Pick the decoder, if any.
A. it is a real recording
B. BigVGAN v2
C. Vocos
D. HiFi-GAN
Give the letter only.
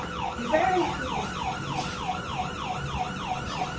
A